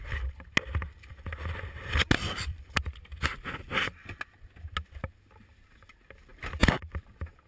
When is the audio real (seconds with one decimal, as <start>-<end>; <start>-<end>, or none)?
0.0-2.5; 3.1-6.3; 7.1-7.5